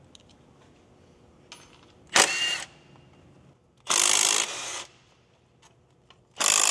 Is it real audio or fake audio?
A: real